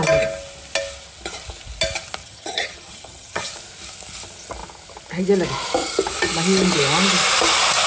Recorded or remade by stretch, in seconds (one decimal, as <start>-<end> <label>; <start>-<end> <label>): 0.0-2.2 recorded; 2.2-3.5 remade; 3.5-7.9 recorded